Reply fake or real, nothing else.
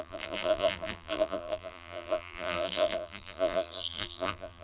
fake